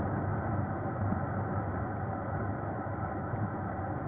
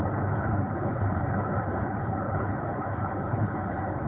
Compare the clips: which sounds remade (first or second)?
second